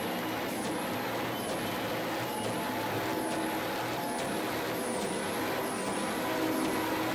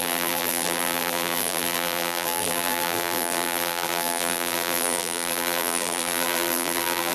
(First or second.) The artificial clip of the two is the second